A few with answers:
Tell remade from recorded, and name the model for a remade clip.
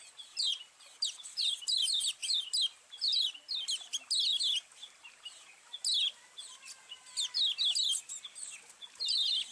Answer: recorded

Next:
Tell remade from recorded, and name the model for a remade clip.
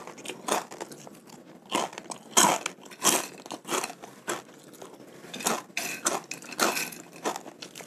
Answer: recorded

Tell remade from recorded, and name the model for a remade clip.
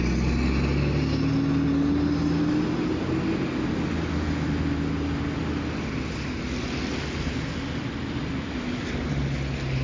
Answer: recorded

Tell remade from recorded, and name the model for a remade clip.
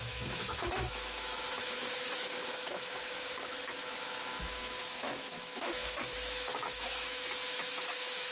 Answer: remade, autoencoder, DAC-VAE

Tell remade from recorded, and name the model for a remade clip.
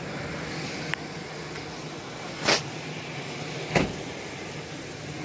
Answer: recorded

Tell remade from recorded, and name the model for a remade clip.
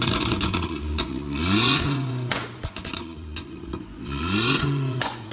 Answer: remade, vocoder, Vocos